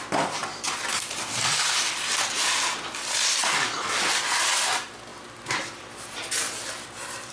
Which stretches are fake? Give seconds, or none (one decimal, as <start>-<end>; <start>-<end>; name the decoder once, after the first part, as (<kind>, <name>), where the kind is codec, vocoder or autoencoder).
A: none